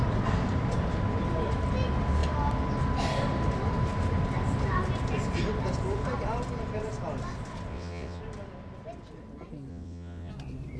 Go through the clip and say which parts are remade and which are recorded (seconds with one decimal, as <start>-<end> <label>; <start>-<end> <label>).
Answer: 0.0-7.7 recorded; 7.7-8.2 remade; 8.2-9.7 recorded; 9.7-10.3 remade; 10.3-10.8 recorded